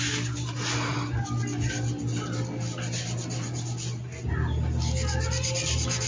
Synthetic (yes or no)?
no